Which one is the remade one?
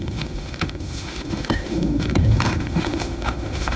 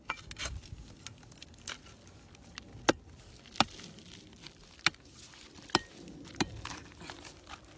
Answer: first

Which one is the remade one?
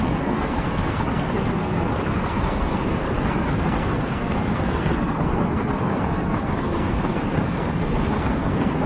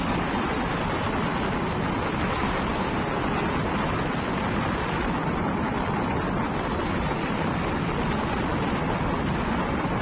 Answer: first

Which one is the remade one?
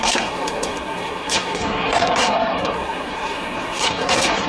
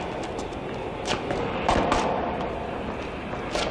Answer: first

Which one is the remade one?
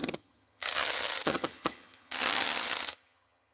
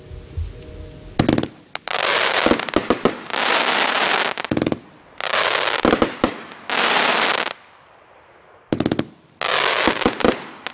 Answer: first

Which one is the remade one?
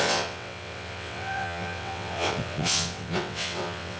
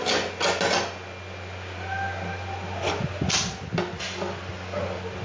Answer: first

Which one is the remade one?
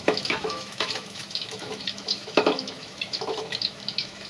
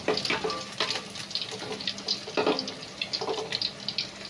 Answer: first